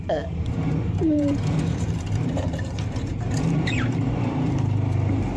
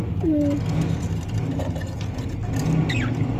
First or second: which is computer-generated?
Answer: first